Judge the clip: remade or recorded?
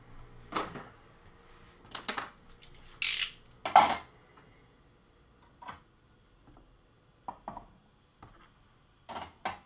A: recorded